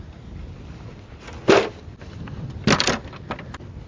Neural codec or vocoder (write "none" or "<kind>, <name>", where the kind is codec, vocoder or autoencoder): none